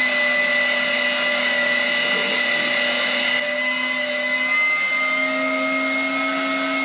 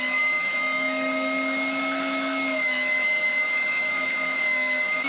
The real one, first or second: first